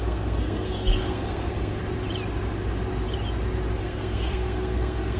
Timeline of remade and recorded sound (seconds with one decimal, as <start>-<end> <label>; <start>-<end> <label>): 0.0-1.8 remade; 1.8-3.8 recorded; 3.8-5.2 remade